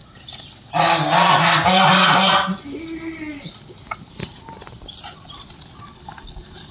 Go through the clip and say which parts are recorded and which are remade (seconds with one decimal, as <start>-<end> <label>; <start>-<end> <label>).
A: 0.0-6.7 recorded

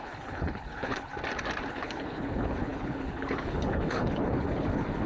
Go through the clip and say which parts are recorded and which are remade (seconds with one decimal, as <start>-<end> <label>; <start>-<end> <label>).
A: 0.0-1.1 remade; 1.1-1.7 recorded; 1.7-5.1 remade